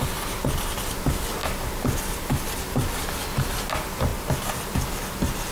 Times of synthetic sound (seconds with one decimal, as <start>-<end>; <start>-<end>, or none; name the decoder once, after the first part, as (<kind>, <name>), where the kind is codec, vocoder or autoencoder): 1.4-3.6 (vocoder, BigVGAN v2)